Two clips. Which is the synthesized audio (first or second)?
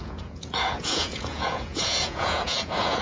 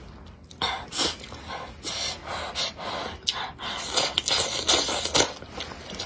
first